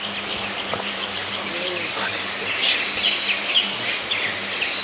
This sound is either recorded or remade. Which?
recorded